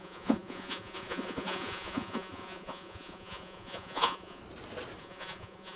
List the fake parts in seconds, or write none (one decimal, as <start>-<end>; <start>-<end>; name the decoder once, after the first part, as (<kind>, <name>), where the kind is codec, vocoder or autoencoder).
0.0-4.4 (vocoder, Vocos); 5.0-5.8